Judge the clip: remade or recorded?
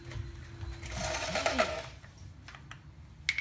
recorded